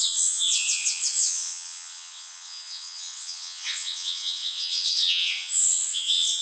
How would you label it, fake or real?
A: fake